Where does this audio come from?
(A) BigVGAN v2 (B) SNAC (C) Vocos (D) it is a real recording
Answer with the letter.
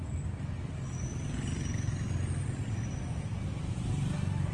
D